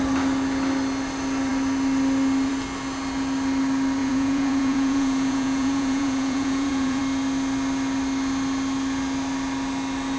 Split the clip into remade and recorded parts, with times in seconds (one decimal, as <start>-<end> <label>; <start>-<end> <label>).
0.0-4.0 recorded; 4.0-7.0 remade; 7.0-10.2 recorded